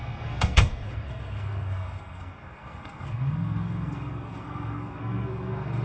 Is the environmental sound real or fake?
fake